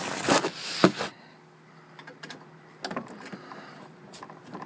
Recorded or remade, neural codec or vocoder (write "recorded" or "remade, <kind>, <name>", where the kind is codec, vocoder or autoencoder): recorded